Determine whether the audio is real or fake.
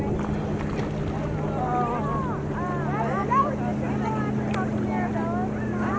real